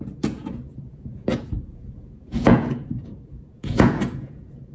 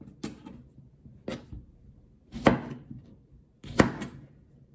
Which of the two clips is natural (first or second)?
second